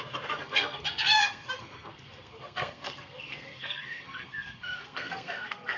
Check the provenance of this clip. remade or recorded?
remade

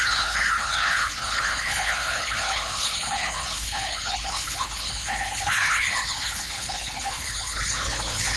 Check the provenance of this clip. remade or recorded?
remade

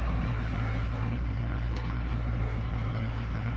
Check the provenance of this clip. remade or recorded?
remade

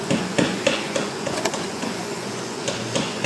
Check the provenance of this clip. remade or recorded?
remade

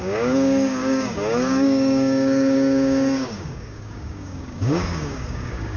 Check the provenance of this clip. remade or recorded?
remade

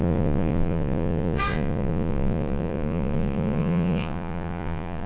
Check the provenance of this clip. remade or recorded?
remade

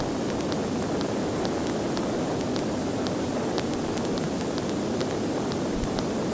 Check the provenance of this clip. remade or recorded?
recorded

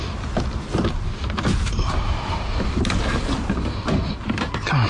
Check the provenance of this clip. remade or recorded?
recorded